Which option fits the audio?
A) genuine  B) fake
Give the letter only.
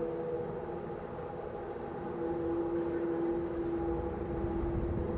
A